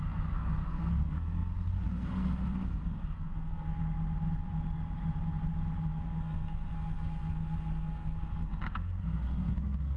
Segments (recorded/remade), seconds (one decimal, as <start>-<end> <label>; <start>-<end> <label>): 0.0-3.8 remade; 3.8-6.0 recorded; 6.0-10.0 remade